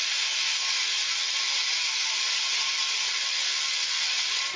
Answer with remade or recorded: recorded